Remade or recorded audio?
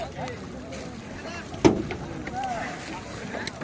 recorded